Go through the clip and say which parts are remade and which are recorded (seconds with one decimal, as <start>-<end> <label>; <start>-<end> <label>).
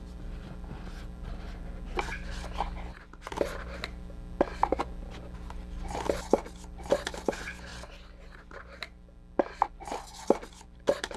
0.0-11.2 recorded